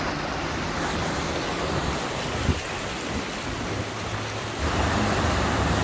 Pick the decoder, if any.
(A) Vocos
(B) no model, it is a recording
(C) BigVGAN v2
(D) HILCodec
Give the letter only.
B